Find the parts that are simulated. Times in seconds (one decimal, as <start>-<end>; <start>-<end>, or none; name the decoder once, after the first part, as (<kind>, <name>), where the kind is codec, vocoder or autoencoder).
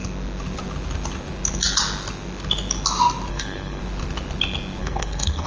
3.3-3.8 (codec, SNAC); 4.8-5.5